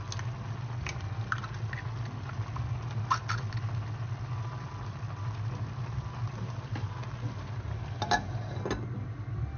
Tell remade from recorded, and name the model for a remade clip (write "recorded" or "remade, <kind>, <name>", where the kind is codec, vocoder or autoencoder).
recorded